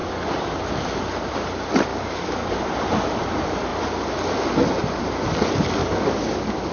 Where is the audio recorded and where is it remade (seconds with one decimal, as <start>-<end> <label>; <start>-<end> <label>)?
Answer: 0.0-1.9 recorded; 1.9-2.5 remade; 2.5-5.8 recorded; 5.8-6.7 remade